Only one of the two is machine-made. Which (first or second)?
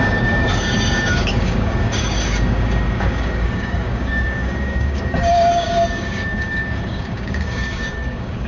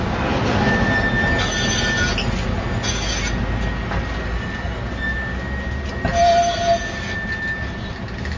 first